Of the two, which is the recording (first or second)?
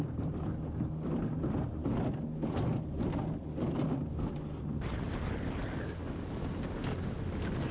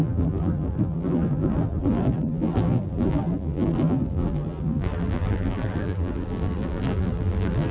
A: first